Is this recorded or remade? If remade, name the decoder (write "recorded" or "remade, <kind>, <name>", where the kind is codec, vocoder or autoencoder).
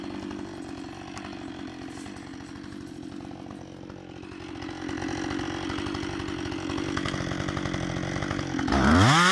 recorded